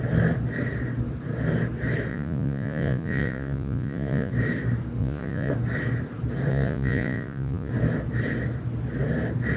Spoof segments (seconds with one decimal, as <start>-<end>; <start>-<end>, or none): 2.1-4.3; 5.0-5.5; 6.5-7.7